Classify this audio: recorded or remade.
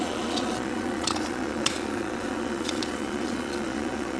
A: remade